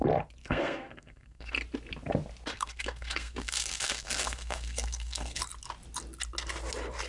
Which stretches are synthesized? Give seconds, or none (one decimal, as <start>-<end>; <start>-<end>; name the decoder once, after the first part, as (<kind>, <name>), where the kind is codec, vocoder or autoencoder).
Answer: 0.4-1.5 (codec, SNAC); 2.5-5.4